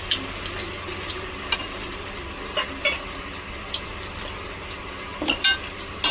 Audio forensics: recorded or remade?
recorded